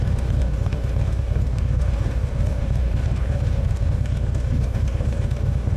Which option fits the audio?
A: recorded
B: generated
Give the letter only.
B